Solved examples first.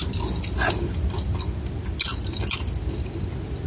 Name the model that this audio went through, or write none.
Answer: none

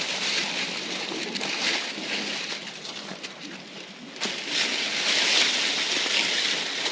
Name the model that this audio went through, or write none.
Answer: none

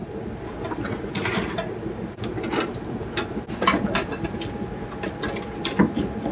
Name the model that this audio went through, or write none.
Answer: none